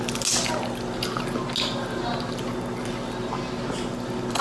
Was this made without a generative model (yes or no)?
yes